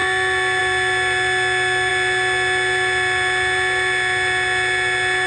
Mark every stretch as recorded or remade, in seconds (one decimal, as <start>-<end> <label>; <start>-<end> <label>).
0.0-5.3 recorded

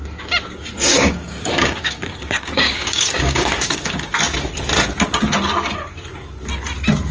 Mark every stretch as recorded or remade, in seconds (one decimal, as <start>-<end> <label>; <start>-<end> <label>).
0.0-0.9 recorded; 0.9-4.2 remade; 4.2-7.1 recorded

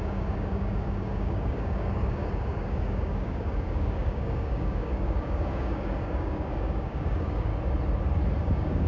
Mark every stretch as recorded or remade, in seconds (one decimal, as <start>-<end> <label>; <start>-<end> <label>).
0.0-7.5 remade; 7.5-8.4 recorded; 8.4-8.9 remade

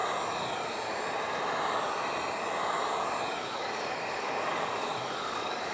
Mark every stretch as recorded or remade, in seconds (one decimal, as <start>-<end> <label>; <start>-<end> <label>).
0.0-3.4 recorded; 3.4-5.7 remade

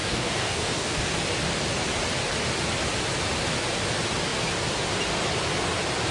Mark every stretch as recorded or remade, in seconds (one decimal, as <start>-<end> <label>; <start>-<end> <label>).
0.0-1.0 remade; 1.0-6.1 recorded

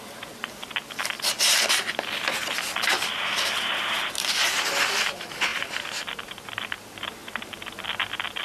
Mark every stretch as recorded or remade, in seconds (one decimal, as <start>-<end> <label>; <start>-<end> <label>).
0.0-8.4 recorded